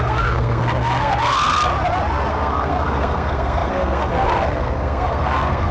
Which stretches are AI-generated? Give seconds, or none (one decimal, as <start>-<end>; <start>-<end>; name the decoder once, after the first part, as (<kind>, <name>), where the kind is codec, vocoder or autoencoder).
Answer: 0.0-1.7 (codec, SNAC); 2.3-5.7